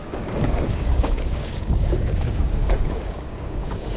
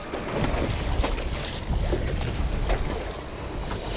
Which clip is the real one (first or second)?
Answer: second